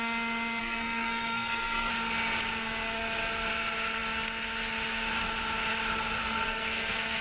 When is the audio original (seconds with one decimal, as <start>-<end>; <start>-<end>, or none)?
0.0-0.6; 1.9-6.2